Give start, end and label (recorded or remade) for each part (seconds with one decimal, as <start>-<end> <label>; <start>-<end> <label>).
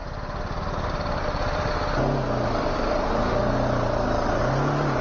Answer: 0.0-1.7 remade; 1.7-5.0 recorded